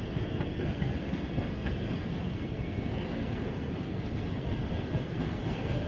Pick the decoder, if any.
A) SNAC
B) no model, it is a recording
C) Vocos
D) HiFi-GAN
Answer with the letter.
A